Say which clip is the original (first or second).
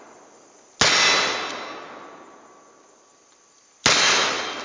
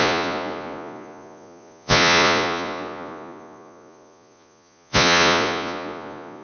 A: first